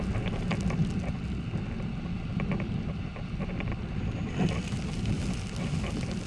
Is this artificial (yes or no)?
no